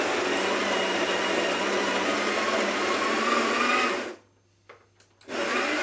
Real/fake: real